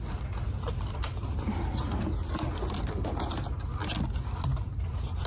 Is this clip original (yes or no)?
yes